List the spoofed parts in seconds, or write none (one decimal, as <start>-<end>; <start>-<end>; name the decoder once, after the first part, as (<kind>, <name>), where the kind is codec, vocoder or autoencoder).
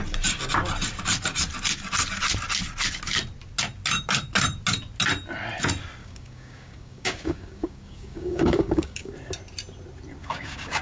6.0-9.1 (codec, DAC); 10.2-10.8